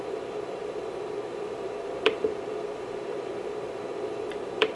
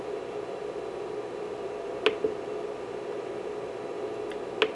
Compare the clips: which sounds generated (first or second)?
first